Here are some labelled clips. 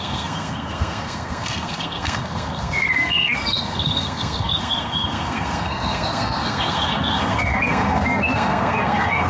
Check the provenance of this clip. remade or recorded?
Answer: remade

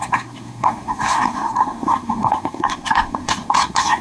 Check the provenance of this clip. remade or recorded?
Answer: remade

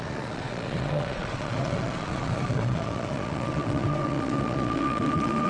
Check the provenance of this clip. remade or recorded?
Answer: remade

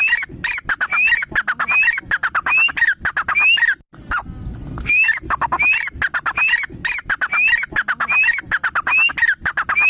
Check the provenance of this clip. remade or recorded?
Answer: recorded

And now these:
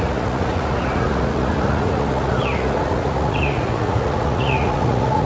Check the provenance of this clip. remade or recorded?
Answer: remade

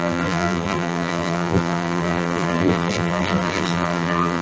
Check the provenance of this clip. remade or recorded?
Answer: remade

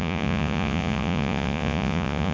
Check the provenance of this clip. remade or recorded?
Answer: remade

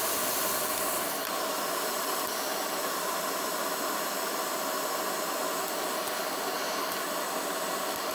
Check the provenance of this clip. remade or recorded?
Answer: recorded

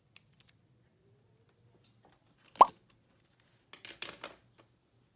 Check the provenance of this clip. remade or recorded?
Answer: recorded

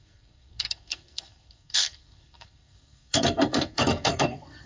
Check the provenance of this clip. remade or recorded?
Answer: remade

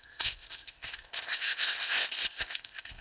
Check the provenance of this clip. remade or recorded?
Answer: remade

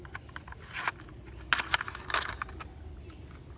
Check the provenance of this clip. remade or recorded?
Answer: recorded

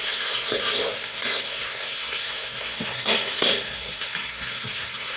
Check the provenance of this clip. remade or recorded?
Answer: remade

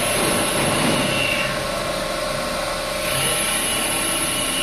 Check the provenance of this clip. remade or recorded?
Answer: recorded